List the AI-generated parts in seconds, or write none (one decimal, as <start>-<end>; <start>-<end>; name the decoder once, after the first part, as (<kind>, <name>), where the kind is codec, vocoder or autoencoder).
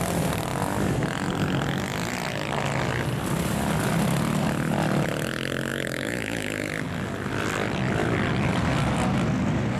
5.7-6.7 (autoencoder, DAC-VAE)